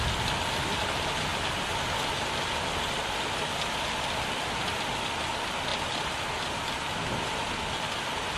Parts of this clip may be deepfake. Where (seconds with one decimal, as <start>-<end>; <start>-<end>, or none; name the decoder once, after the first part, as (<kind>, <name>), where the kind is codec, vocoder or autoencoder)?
none